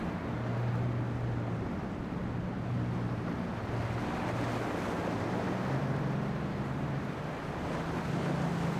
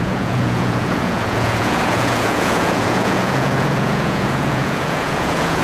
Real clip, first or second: first